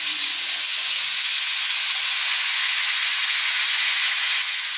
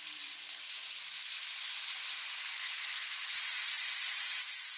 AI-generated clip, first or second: first